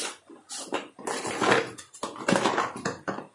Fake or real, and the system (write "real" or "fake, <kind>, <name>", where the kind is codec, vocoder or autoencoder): real